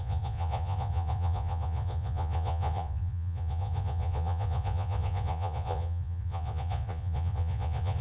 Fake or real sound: fake